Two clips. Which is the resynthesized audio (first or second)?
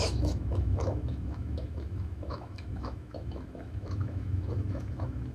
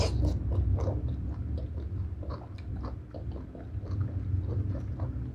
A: first